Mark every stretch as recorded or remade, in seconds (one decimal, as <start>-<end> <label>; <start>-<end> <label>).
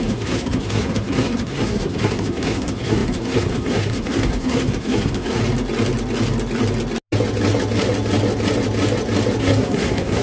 0.0-5.4 remade; 5.4-9.4 recorded; 9.4-10.2 remade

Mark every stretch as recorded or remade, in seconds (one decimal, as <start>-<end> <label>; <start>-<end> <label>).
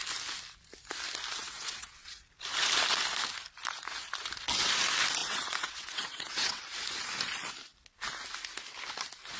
0.0-1.4 recorded; 1.4-2.2 remade; 2.2-5.2 recorded; 5.2-6.6 remade; 6.6-9.4 recorded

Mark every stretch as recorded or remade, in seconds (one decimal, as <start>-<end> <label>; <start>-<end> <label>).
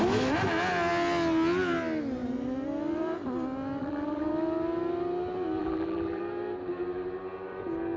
0.0-3.8 recorded; 3.8-4.3 remade; 4.3-5.6 recorded; 5.6-6.2 remade; 6.2-8.0 recorded